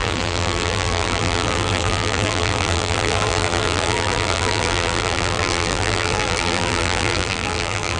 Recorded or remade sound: remade